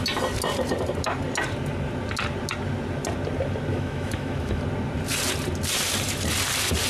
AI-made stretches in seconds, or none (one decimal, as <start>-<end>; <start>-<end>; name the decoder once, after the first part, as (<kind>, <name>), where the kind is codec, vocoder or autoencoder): 3.7-4.6 (autoencoder, DAC-VAE)